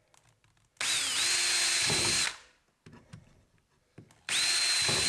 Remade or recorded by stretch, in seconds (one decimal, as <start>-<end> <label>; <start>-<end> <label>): 0.0-3.1 recorded; 3.1-5.1 remade